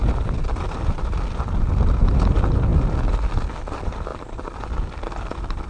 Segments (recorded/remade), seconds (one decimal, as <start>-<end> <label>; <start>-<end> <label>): 0.0-5.7 recorded